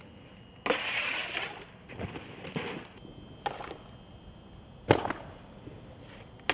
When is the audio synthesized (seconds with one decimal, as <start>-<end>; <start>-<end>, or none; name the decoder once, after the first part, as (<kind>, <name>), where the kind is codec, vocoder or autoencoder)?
none